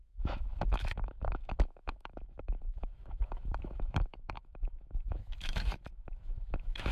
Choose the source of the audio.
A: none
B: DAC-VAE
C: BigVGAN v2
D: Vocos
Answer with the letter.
B